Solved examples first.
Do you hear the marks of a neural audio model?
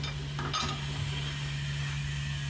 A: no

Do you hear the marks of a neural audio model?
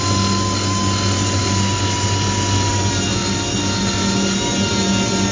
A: no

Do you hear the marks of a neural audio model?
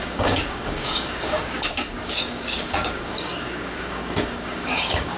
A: yes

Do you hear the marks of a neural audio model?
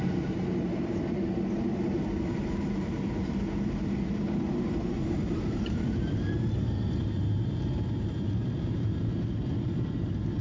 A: yes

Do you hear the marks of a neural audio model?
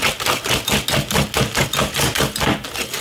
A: no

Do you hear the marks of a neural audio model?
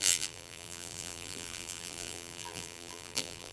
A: yes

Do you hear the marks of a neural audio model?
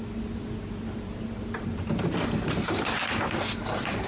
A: yes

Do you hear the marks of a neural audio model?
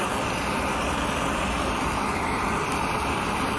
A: no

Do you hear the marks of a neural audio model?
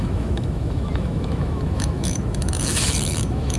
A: yes